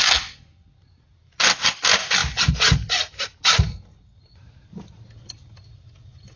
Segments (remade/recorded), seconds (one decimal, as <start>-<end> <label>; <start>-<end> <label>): 0.0-6.4 recorded